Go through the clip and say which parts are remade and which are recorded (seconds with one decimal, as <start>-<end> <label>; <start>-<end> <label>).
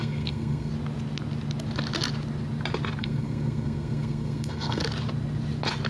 0.0-0.7 remade; 0.7-3.0 recorded; 3.0-4.8 remade; 4.8-5.9 recorded